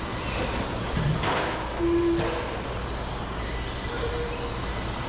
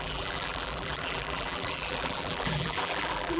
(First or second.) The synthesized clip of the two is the second